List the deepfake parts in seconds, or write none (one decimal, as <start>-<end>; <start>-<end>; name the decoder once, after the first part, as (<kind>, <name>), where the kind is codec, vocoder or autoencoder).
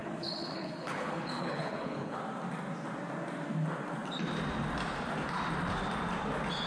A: 0.0-2.2 (codec, HILCodec)